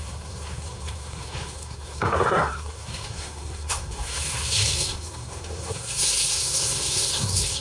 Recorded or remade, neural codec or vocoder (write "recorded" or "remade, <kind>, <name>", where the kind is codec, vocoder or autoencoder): remade, codec, SNAC